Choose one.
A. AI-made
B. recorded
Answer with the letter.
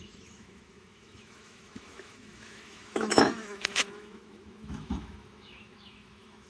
A